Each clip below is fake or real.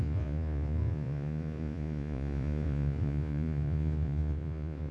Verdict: fake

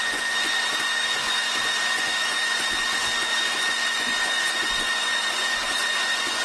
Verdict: fake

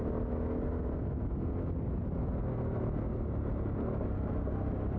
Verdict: real